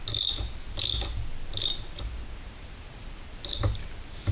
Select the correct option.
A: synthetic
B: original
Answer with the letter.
B